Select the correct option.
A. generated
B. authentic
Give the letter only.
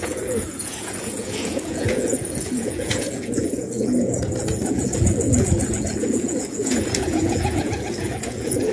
A